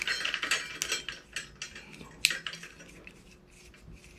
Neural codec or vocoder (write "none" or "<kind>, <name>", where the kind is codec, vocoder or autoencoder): none